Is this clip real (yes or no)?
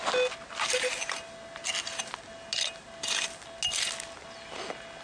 yes